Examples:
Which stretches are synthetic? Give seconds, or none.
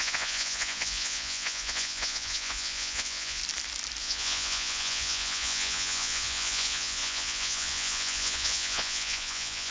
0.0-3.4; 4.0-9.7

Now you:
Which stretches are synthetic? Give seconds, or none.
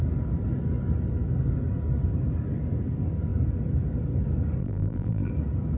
4.6-5.3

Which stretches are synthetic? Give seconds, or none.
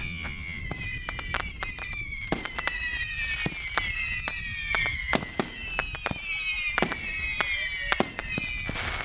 0.0-0.6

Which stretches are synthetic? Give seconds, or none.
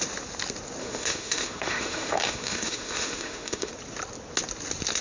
0.8-3.7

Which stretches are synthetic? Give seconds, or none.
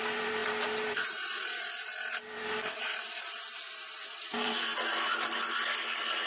0.0-4.7